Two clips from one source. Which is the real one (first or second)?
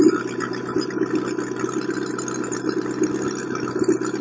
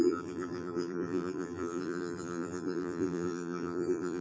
first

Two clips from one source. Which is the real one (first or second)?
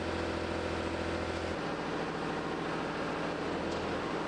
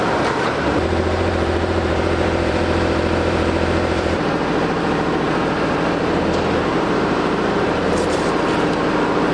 first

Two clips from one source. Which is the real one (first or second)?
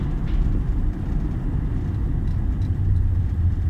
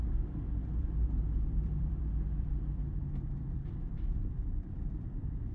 first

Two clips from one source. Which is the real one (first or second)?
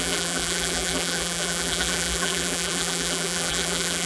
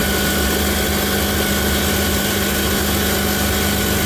second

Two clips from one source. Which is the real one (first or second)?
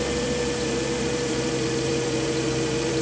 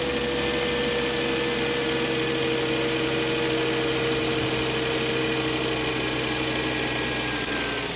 second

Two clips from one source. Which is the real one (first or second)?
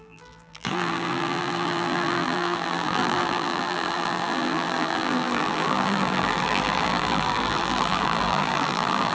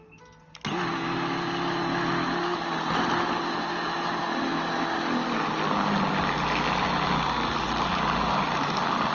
second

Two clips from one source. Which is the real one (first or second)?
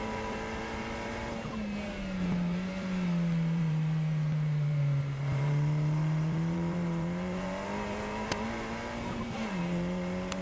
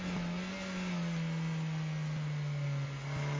second